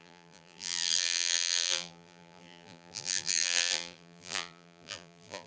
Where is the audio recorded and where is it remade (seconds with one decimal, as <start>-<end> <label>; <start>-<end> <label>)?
0.0-5.5 remade